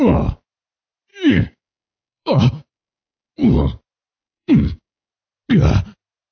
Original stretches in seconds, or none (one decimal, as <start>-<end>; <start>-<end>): 0.0-1.1; 3.3-4.2; 5.1-6.3